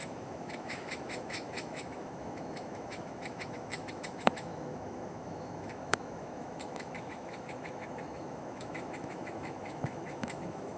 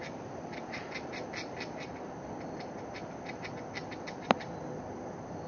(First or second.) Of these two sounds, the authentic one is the second